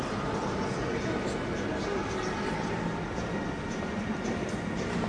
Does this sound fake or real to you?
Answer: real